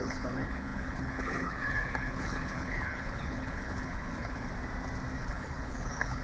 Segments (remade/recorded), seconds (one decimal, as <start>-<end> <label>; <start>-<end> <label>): 0.0-4.5 remade; 4.5-5.2 recorded; 5.2-6.2 remade

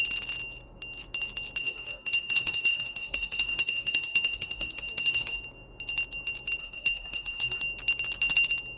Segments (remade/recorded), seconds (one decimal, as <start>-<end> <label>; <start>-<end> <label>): 0.0-1.6 recorded; 1.6-5.4 remade; 5.4-6.6 recorded; 6.6-7.6 remade; 7.6-8.8 recorded

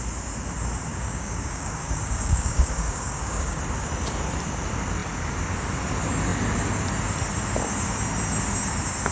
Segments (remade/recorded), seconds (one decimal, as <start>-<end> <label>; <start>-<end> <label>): 0.0-0.9 recorded; 0.9-3.6 remade; 3.6-9.1 recorded

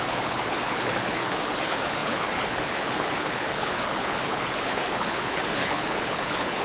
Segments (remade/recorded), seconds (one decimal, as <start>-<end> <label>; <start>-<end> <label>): 0.0-6.6 remade